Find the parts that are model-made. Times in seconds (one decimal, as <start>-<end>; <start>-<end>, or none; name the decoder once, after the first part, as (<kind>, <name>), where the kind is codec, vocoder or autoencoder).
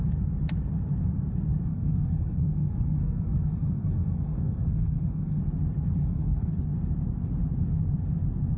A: 1.7-5.4 (codec, SNAC); 6.0-6.5